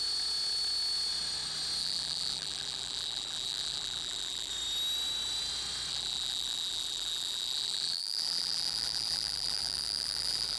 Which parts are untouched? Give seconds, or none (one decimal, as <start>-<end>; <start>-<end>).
0.0-1.8; 4.5-5.9